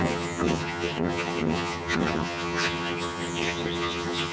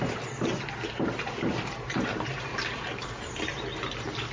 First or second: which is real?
second